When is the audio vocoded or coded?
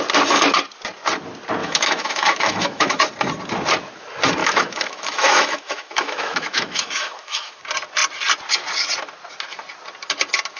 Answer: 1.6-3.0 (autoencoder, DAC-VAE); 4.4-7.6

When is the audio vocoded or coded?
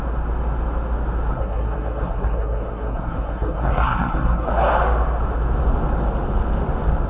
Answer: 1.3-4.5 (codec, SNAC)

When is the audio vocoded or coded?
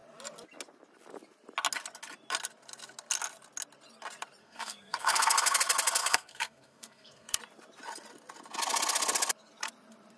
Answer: 4.4-5.6 (codec, SNAC); 6.0-7.4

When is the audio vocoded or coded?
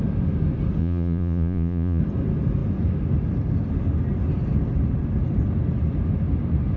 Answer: 0.8-2.0 (vocoder, Vocos)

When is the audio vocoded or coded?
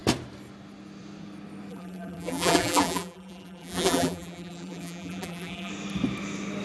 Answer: 1.7-5.7 (vocoder, BigVGAN v2)